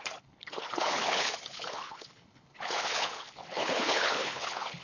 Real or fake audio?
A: fake